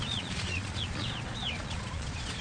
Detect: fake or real fake